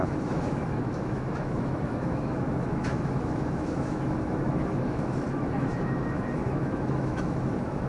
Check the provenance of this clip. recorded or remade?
remade